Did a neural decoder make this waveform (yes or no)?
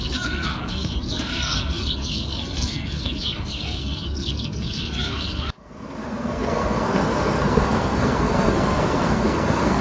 yes